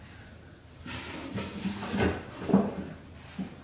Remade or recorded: recorded